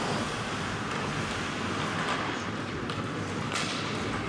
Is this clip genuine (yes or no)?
yes